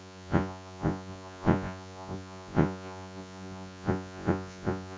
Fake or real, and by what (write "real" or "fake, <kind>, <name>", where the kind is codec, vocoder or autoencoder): fake, vocoder, Vocos